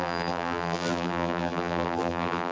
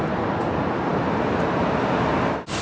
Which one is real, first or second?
second